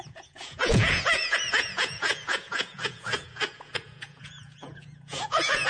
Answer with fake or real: fake